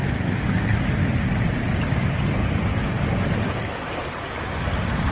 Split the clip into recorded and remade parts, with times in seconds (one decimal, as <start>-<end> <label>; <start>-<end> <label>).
0.0-5.1 recorded